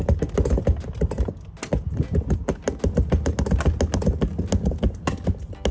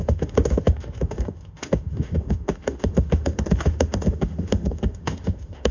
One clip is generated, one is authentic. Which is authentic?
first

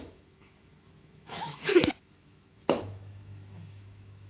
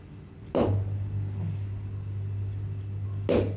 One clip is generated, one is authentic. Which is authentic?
second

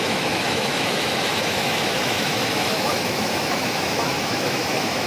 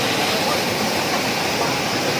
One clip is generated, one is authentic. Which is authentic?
second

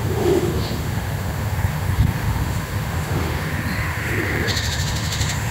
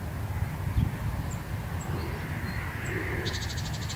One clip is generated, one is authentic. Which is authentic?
second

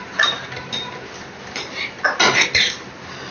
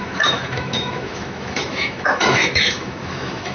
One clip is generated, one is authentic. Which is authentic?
first